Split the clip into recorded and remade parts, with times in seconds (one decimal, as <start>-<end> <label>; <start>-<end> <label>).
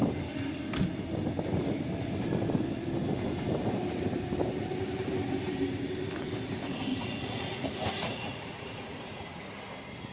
0.0-6.9 recorded; 6.9-9.6 remade; 9.6-10.1 recorded